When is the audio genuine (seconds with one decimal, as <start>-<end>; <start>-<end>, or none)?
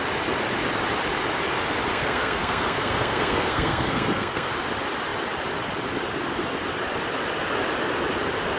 0.0-1.9; 4.5-8.6